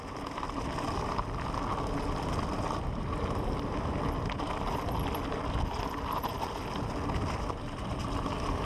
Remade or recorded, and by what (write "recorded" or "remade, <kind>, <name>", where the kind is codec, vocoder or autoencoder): recorded